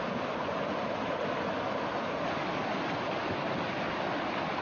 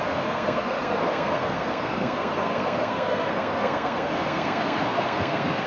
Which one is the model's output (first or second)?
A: second